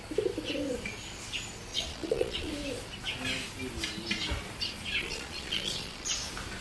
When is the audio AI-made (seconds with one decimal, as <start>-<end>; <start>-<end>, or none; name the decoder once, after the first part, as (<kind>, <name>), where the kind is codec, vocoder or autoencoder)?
1.7-2.5 (vocoder, Vocos); 5.0-6.1